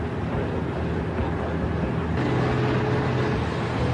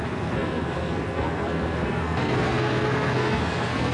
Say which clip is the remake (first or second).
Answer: second